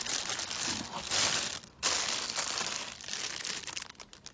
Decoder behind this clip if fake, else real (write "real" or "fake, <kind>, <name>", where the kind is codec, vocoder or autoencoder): real